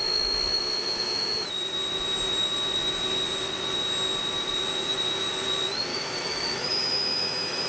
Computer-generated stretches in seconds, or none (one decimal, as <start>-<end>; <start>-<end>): 0.0-1.5; 5.9-7.7